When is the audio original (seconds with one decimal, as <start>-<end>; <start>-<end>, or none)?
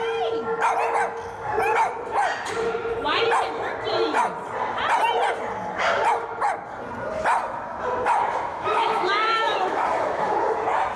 0.0-8.5; 10.4-11.0